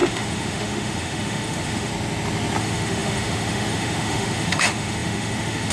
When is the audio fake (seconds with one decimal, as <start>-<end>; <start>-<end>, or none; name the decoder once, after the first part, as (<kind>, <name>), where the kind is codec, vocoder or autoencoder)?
0.0-1.9 (autoencoder, DAC-VAE); 2.6-5.7